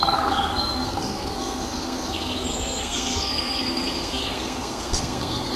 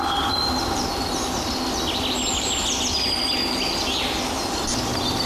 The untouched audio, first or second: second